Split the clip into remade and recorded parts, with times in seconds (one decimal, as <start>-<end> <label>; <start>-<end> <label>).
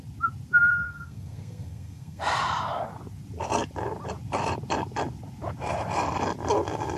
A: 0.0-0.7 recorded; 0.7-2.2 remade; 2.2-7.0 recorded